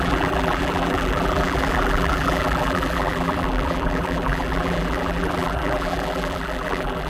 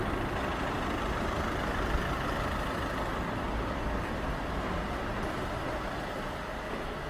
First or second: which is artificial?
first